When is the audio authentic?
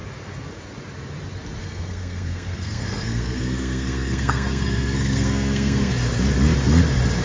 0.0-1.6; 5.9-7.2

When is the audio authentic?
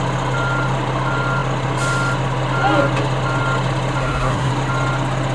0.0-4.0; 4.5-5.3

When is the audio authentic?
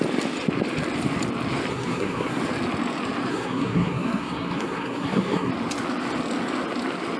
0.0-1.7; 2.4-3.3; 5.5-7.2